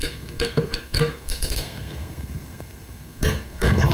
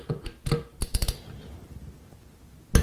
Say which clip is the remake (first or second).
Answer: first